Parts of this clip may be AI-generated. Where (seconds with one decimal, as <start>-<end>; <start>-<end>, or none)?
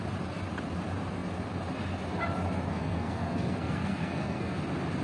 2.7-4.6